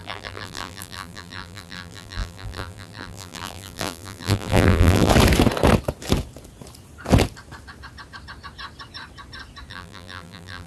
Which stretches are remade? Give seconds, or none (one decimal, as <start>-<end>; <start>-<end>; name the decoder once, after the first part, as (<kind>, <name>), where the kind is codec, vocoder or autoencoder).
0.0-5.1 (vocoder, BigVGAN v2); 9.7-10.7